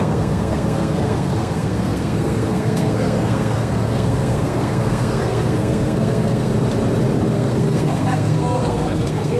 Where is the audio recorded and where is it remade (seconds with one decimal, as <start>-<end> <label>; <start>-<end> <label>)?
0.0-6.5 remade; 6.5-7.3 recorded; 7.3-9.4 remade